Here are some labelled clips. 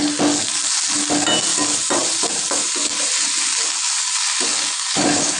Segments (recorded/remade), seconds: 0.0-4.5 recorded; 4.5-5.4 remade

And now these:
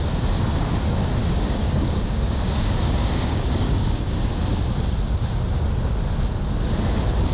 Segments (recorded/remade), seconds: 0.0-1.2 recorded; 1.2-4.4 remade; 4.4-7.3 recorded

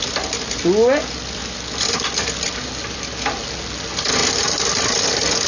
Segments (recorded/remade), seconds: 0.0-5.5 recorded